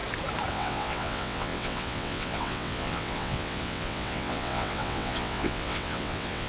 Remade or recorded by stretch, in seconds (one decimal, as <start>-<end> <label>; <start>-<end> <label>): 0.0-0.5 recorded; 0.5-6.5 remade